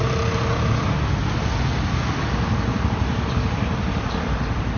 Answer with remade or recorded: recorded